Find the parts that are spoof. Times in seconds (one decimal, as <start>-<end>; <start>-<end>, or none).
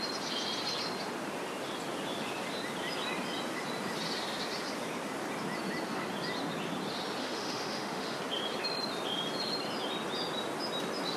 7.2-8.2